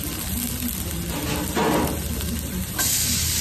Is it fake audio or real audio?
real